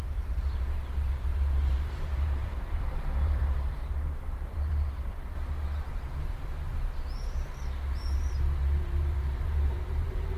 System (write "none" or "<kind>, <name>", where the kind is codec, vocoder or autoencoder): vocoder, BigVGAN v2